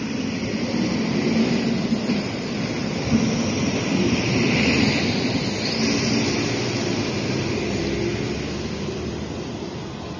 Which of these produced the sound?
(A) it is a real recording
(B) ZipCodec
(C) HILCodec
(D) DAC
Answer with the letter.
A